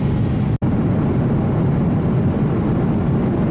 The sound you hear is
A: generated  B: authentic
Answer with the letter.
B